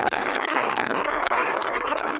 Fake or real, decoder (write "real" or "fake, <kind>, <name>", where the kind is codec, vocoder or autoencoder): fake, codec, SNAC